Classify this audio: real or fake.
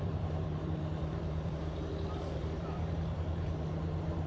fake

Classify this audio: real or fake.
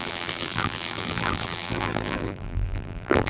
fake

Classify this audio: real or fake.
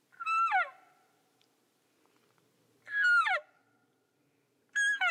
real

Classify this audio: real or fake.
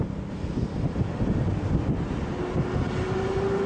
real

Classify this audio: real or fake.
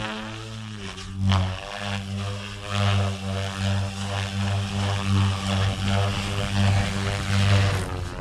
real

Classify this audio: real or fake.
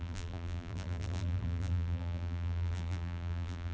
fake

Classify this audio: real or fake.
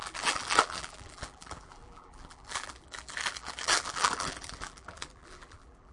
fake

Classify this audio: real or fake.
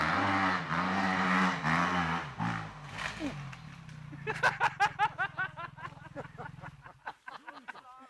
real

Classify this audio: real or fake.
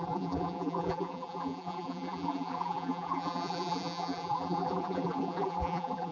fake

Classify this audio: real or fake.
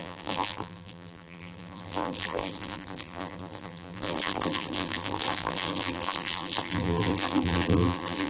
fake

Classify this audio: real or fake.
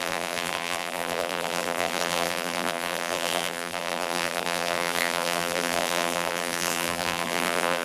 fake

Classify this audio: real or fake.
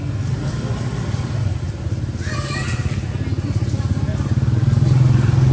real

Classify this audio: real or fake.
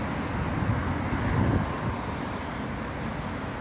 real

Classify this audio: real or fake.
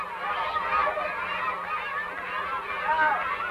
real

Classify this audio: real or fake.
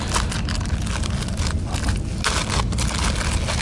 real